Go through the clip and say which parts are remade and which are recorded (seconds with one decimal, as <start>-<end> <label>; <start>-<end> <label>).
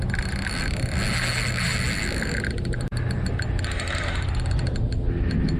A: 0.0-5.6 recorded